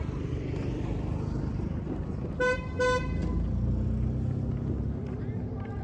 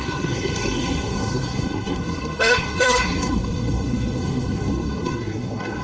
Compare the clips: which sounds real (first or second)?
first